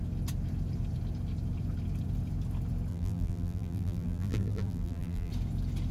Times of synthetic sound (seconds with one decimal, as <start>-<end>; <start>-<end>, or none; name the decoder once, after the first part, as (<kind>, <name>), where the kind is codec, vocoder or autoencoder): 2.9-5.3 (vocoder, BigVGAN v2)